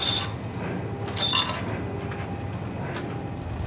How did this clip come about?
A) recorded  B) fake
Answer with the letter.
A